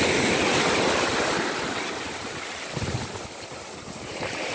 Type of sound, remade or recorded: recorded